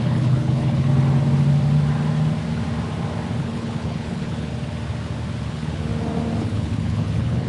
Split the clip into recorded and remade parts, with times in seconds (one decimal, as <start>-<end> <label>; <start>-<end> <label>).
0.0-0.9 remade; 0.9-3.4 recorded; 3.4-4.5 remade; 4.5-5.5 recorded; 5.5-5.9 remade; 5.9-6.4 recorded; 6.4-7.5 remade